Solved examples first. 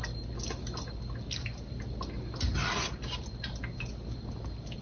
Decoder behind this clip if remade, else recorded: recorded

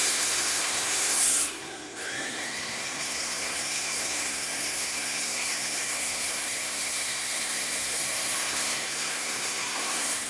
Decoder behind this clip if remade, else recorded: remade, codec, SNAC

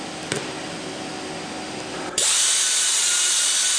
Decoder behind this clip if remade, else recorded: recorded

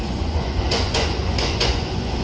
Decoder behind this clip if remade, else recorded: remade, vocoder, Vocos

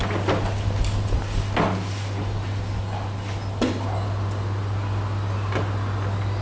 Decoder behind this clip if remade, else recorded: recorded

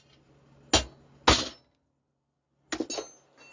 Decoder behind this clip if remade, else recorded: recorded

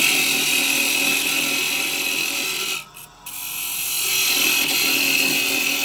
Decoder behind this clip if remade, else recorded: recorded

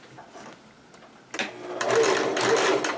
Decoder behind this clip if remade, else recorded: recorded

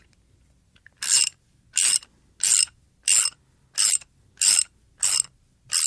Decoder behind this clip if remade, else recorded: recorded